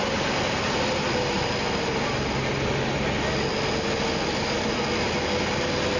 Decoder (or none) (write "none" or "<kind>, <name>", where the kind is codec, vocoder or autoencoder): none